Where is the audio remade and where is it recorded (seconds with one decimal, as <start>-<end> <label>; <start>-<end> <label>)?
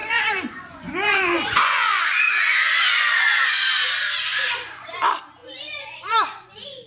0.0-3.9 remade; 3.9-4.3 recorded; 4.3-5.0 remade; 5.0-5.4 recorded; 5.4-6.9 remade